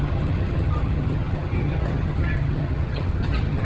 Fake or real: fake